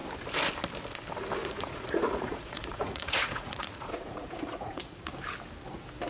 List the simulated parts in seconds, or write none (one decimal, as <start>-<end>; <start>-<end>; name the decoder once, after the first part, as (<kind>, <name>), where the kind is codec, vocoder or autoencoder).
1.4-5.1 (vocoder, Vocos)

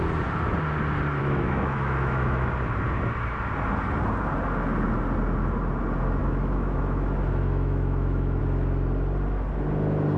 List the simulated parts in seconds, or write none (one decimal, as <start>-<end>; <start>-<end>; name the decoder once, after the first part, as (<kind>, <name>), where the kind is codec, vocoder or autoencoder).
1.2-2.5 (autoencoder, DAC-VAE); 6.2-8.4

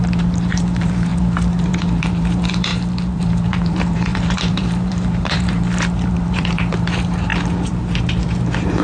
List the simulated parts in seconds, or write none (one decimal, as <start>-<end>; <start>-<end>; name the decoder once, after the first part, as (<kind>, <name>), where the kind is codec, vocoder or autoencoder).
0.0-7.3 (vocoder, BigVGAN v2); 8.3-8.8

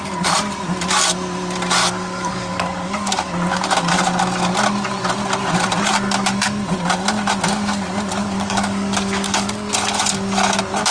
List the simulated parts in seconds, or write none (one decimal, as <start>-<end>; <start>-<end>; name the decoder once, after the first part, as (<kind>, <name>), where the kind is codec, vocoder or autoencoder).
1.8-3.3 (codec, DAC); 8.2-9.7

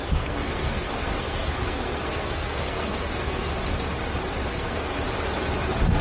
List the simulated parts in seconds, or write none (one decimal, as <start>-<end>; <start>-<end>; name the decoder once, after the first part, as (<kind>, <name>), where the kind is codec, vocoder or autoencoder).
0.0-3.5 (codec, SNAC); 4.5-4.9